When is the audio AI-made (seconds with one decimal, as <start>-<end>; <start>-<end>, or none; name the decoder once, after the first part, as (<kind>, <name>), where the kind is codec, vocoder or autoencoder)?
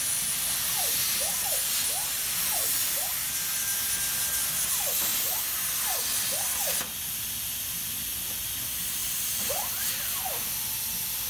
none